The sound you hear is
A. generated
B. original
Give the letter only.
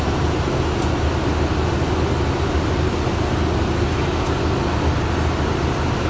B